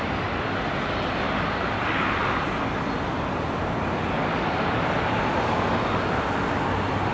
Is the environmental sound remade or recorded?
recorded